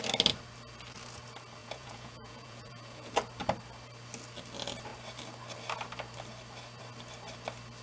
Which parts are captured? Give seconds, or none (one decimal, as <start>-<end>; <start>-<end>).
0.0-1.6; 3.1-7.8